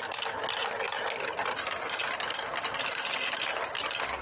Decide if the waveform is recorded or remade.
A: recorded